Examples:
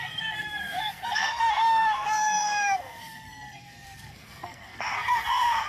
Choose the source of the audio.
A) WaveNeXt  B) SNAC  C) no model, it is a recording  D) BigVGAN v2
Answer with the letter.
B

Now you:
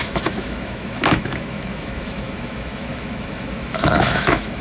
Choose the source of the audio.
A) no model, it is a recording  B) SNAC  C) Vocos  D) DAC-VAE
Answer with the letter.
D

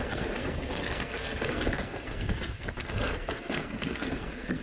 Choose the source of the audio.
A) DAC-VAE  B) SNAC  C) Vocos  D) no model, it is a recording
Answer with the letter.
B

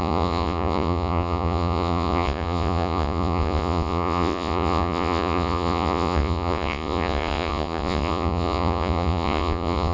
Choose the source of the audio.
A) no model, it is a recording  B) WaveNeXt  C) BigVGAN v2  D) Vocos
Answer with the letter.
D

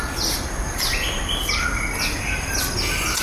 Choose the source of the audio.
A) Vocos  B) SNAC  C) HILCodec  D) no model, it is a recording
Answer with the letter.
D